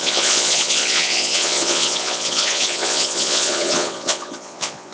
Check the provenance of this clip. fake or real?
fake